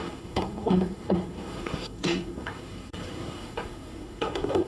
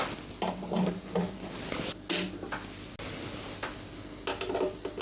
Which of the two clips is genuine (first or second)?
second